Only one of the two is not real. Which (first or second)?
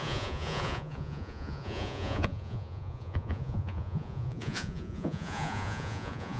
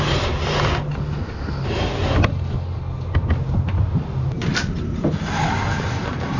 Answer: first